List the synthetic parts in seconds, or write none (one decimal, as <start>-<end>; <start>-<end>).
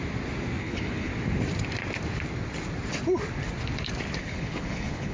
0.6-1.1; 4.2-5.1